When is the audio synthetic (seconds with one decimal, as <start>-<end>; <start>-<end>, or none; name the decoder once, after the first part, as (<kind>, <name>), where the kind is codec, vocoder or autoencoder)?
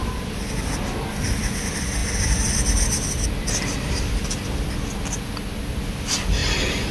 none